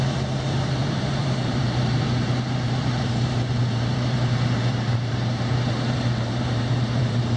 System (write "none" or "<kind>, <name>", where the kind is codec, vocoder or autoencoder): vocoder, BigVGAN v2